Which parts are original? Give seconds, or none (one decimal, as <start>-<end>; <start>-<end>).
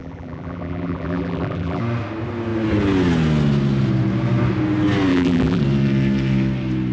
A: 1.8-5.1; 5.6-6.9